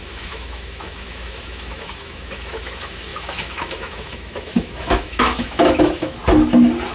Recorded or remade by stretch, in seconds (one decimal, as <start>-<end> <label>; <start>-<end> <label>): 0.0-6.2 remade; 6.2-6.9 recorded